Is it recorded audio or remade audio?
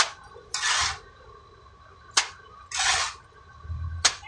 recorded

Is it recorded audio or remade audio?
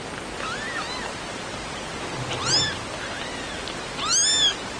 recorded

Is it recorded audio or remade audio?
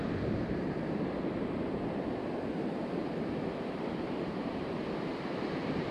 remade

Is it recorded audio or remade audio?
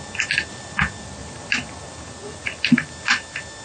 recorded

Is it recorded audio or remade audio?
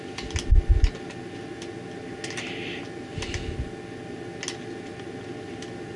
recorded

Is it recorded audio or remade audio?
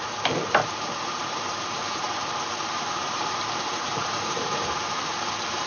remade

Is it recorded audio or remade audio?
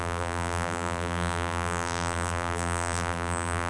remade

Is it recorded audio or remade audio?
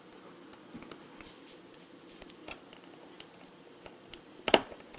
remade